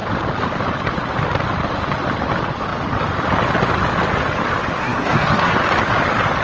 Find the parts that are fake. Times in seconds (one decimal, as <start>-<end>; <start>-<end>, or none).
4.8-5.6

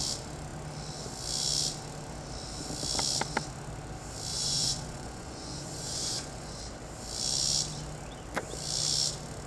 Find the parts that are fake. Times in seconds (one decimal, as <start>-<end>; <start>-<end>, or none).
4.3-6.6

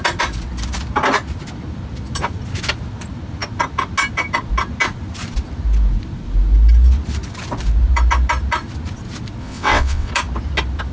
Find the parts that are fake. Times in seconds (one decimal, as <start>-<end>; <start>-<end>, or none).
9.4-10.1

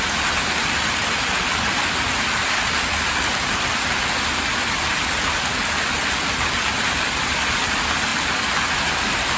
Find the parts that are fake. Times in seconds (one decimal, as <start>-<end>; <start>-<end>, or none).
none

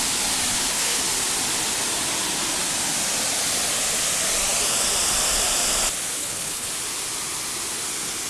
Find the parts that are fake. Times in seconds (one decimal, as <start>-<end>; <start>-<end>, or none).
0.5-1.0; 6.2-6.7